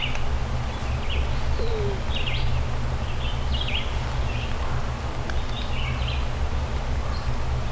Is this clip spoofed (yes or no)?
no